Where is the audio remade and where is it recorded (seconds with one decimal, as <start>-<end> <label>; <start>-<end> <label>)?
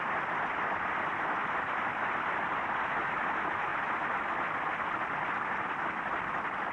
0.0-6.7 recorded